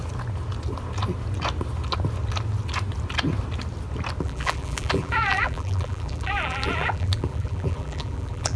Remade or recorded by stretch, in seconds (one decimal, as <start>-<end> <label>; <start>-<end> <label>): 0.0-4.2 recorded; 4.2-8.6 remade